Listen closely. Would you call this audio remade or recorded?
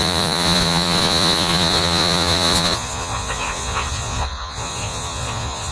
remade